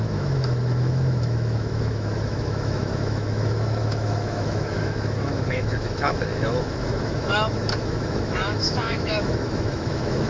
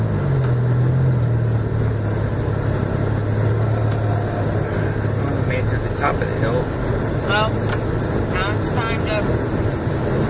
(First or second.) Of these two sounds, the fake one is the first